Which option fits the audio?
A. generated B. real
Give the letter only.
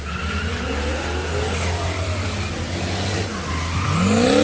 B